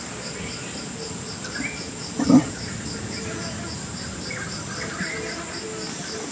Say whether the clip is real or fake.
real